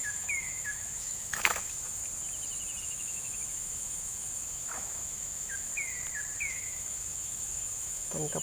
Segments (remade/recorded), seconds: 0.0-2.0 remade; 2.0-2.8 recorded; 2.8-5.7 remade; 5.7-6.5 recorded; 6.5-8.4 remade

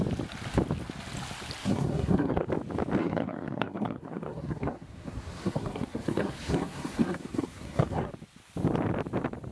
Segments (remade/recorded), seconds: 0.0-1.6 recorded; 1.6-2.5 remade; 2.5-3.0 recorded; 3.0-8.1 remade; 8.1-9.5 recorded

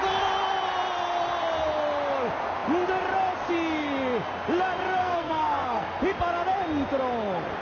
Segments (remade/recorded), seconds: 0.0-5.0 recorded; 5.0-6.0 remade; 6.0-7.6 recorded

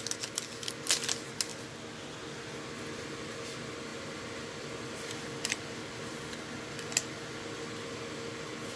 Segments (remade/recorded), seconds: 0.0-8.8 recorded

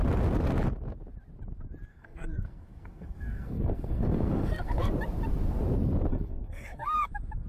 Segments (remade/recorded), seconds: 0.0-1.9 recorded; 1.9-4.9 remade; 4.9-6.1 recorded; 6.1-7.1 remade; 7.1-7.5 recorded

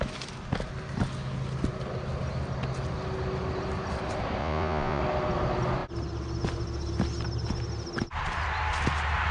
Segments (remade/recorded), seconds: 0.0-4.4 recorded; 4.4-5.0 remade; 5.0-9.3 recorded

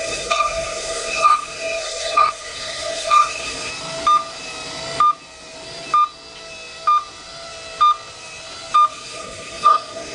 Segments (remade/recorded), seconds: 0.0-3.7 remade; 3.7-8.9 recorded; 8.9-10.1 remade